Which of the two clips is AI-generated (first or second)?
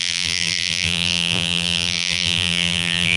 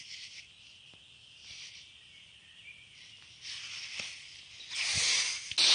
first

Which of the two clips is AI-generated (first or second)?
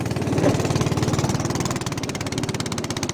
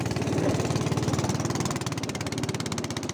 second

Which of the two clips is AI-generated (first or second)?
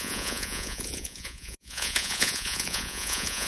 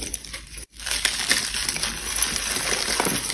first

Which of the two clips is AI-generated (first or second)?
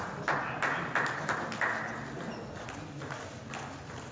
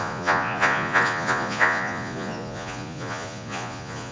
second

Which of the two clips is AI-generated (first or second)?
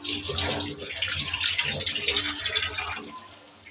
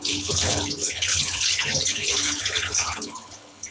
second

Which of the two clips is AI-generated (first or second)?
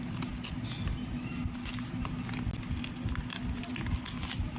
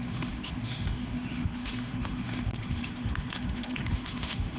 second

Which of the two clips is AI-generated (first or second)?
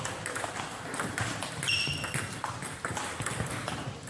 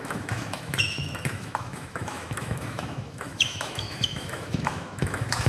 second